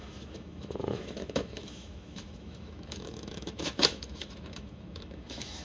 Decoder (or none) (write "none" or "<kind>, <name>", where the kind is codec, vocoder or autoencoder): autoencoder, DAC-VAE